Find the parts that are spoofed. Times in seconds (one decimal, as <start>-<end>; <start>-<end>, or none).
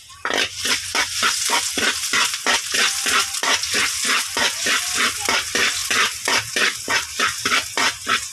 3.4-5.0